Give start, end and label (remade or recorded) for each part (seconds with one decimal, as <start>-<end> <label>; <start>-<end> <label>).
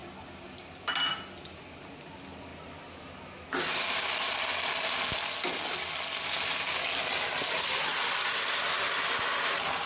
0.0-9.9 recorded